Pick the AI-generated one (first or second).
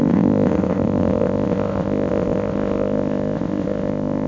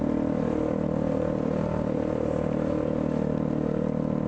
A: first